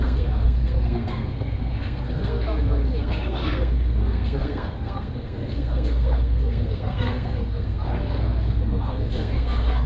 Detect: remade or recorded remade